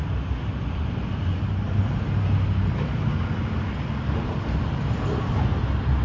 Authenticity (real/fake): real